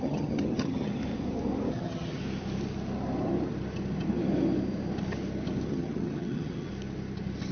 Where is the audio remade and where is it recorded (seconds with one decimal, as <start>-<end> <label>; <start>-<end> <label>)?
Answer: 0.0-1.0 remade; 1.0-1.7 recorded; 1.7-2.2 remade; 2.2-5.7 recorded; 5.7-6.7 remade; 6.7-7.5 recorded